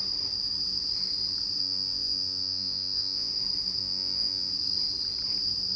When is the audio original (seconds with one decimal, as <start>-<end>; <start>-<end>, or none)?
0.0-1.6; 3.3-3.8; 4.5-5.8